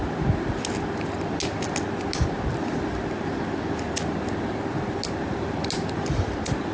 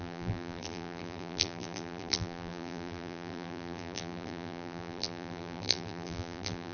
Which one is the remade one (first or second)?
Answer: second